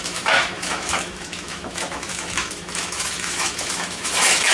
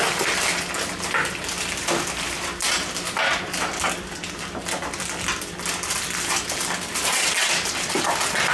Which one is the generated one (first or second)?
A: first